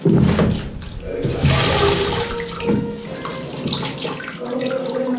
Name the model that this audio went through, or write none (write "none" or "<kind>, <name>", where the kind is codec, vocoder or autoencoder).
none